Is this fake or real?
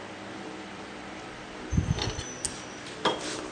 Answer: real